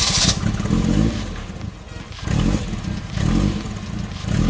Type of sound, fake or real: real